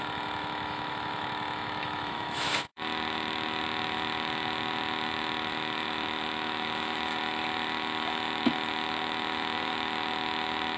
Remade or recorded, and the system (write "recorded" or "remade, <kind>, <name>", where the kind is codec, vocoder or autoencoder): remade, autoencoder, DAC-VAE